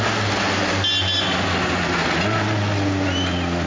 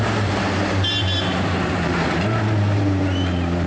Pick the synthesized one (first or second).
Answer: second